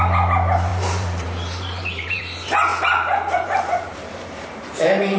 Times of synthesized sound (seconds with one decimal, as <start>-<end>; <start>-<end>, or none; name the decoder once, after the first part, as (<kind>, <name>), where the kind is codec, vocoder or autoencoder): 0.7-2.2 (vocoder, BigVGAN v2); 2.7-5.2

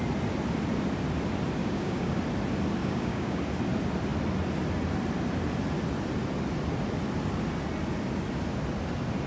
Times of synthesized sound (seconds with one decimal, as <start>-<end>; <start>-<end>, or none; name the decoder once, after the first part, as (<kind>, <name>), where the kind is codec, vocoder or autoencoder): 1.6-2.2 (codec, DAC); 2.8-3.4

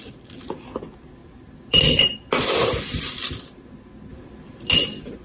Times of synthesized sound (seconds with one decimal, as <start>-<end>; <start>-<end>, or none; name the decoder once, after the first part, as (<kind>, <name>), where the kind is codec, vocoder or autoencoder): none

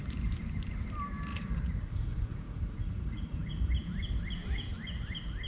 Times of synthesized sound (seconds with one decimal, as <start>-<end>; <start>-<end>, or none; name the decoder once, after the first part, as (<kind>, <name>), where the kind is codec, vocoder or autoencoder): 1.3-3.7 (vocoder, Vocos)